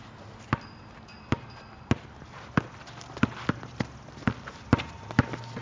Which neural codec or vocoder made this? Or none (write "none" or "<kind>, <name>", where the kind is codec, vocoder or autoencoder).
none